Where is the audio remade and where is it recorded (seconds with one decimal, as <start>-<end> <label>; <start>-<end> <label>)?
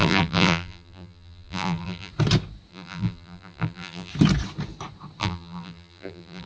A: 0.0-2.1 remade; 2.1-2.7 recorded; 2.7-4.1 remade; 4.1-5.2 recorded; 5.2-6.5 remade